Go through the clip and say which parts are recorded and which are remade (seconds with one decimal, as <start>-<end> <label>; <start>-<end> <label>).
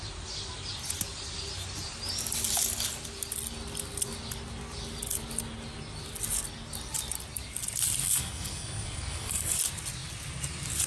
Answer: 0.0-8.0 recorded; 8.0-9.6 remade; 9.6-10.9 recorded